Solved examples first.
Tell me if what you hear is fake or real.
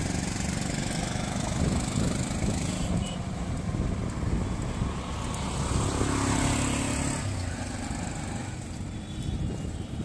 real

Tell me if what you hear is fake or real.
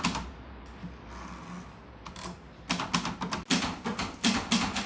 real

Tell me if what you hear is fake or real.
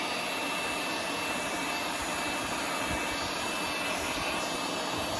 real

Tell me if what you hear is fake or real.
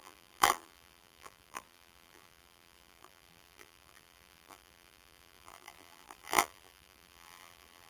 fake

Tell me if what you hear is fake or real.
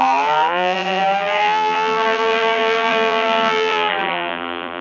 fake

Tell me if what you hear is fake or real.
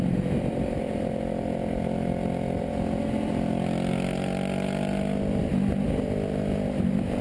real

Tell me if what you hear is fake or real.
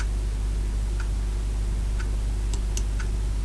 real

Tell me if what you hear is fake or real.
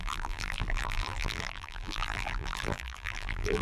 fake